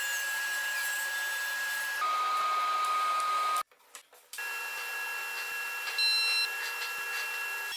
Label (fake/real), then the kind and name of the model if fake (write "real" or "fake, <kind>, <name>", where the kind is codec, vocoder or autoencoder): real